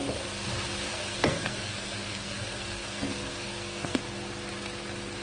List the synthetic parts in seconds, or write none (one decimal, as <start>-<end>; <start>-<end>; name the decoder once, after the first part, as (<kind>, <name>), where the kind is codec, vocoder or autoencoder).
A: 0.9-4.0 (codec, SNAC)